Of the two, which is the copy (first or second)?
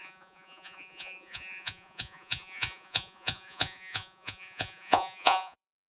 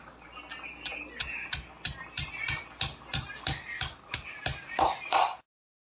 first